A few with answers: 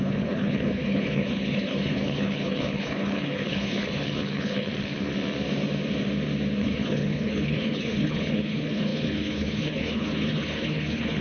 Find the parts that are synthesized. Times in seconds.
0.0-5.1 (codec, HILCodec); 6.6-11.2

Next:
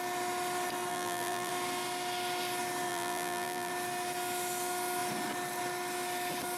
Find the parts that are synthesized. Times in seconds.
0.9-1.5 (vocoder, BigVGAN v2); 2.9-3.7

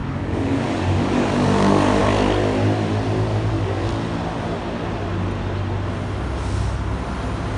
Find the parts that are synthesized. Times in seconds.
0.0-2.0 (codec, DAC); 3.3-3.9

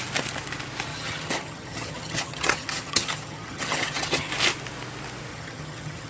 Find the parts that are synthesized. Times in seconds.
0.9-4.3 (vocoder, HiFi-GAN); 5.3-6.1